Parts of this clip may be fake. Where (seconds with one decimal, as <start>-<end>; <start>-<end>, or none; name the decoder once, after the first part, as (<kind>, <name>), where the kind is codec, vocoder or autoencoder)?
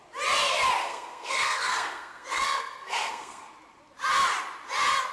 0.8-3.5 (codec, SNAC)